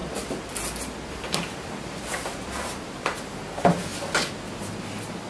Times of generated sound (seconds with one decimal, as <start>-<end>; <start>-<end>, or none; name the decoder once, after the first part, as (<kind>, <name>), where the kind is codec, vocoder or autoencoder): 1.1-3.9 (vocoder, BigVGAN v2)